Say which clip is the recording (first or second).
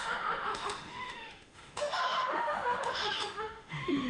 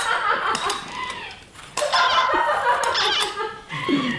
second